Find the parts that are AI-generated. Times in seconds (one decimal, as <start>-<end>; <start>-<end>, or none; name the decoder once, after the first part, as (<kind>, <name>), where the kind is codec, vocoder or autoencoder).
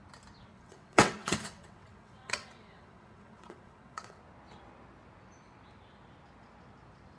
0.5-4.2 (vocoder, WaveNeXt)